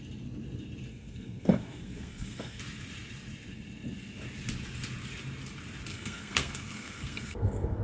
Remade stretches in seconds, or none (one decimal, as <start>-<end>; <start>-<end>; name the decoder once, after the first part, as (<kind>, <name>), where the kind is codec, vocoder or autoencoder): 0.9-2.6 (codec, SNAC); 5.9-7.8